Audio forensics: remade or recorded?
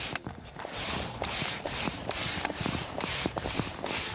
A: remade